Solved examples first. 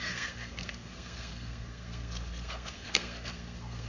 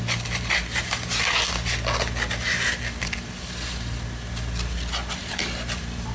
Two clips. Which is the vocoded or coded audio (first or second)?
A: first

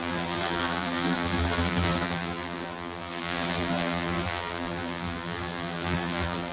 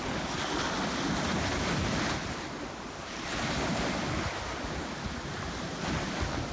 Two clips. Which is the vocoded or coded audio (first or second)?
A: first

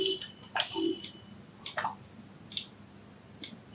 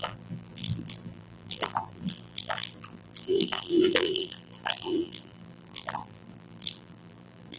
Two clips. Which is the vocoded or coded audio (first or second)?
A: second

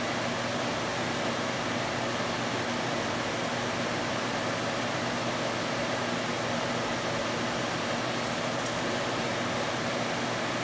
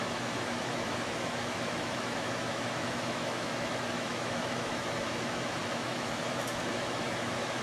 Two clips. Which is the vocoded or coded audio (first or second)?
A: second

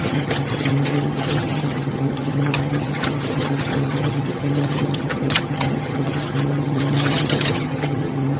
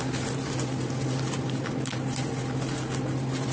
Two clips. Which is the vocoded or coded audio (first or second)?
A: first